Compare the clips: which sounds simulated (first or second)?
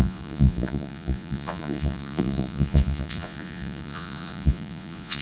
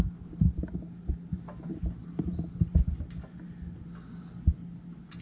first